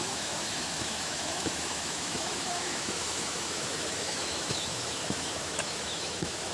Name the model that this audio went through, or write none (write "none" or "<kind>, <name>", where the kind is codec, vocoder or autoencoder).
autoencoder, DAC-VAE